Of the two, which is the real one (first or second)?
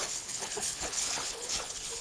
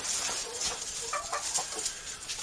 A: second